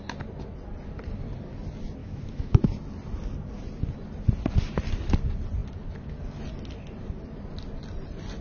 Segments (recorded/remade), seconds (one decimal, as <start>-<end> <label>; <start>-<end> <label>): 0.0-2.0 recorded; 2.0-2.6 remade; 2.6-8.4 recorded